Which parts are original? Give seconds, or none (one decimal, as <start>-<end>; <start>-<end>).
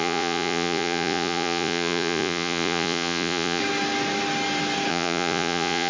3.6-4.9